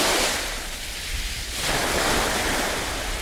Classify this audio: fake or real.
real